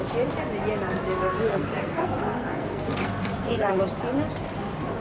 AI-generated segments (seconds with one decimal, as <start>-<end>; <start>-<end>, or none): 1.2-3.8